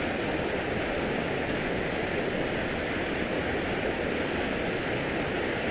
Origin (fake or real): real